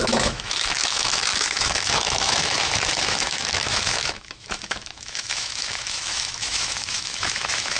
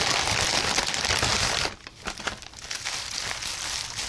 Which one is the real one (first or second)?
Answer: second